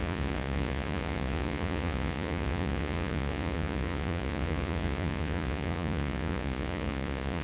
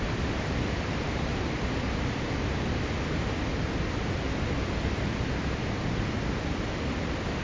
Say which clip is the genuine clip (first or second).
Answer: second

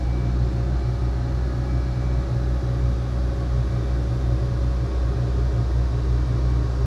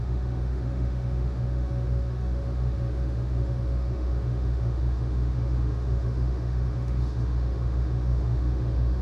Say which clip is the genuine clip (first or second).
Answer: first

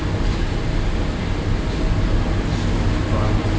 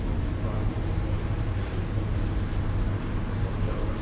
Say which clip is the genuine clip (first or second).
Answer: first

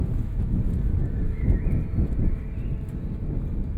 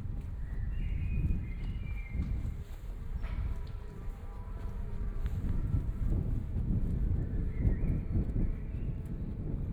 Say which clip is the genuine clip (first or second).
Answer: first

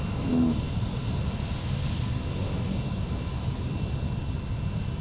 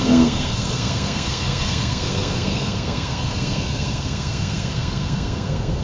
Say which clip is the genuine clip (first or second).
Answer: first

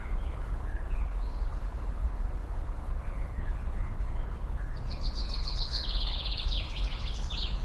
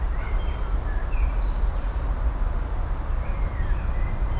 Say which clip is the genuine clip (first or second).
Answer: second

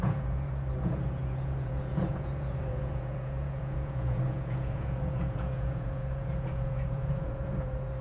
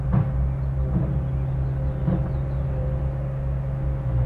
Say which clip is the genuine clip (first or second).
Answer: second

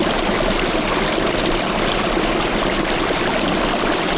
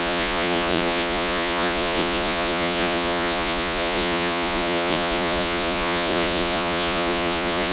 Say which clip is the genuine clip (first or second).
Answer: first